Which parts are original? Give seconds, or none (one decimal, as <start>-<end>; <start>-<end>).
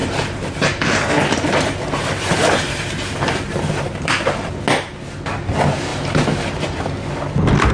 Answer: 4.6-5.9; 6.8-7.7